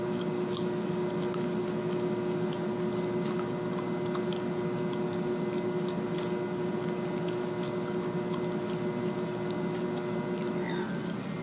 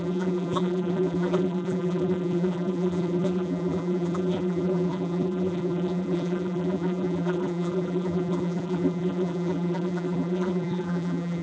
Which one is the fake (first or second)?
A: second